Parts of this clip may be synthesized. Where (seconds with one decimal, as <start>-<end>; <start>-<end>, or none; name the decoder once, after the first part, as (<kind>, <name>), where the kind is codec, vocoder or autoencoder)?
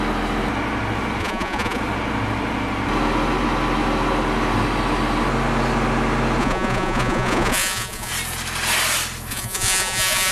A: 1.2-1.8 (vocoder, Vocos); 6.4-8.1; 9.3-10.3